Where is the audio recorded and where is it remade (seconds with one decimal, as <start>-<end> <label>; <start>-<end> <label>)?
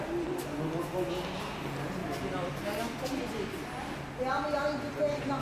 0.0-5.4 recorded